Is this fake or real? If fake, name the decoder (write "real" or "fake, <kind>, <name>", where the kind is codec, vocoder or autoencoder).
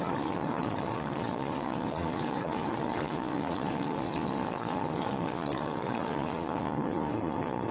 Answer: fake, vocoder, Vocos